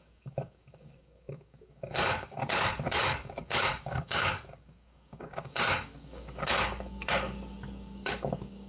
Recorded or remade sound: remade